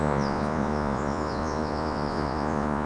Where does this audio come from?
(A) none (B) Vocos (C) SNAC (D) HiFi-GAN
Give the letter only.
B